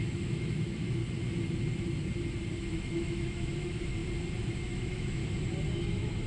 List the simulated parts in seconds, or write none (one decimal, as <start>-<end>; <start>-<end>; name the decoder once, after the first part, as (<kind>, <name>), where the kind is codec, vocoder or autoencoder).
0.0-1.0 (autoencoder, DAC-VAE); 2.9-4.0; 4.6-5.2; 5.7-6.3